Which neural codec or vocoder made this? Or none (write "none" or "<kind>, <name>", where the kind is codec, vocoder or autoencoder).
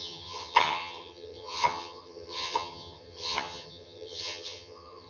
vocoder, HiFi-GAN